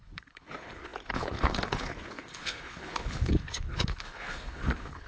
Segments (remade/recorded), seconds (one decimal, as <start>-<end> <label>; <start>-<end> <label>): 0.0-5.1 remade